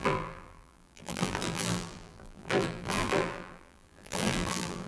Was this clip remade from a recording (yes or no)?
yes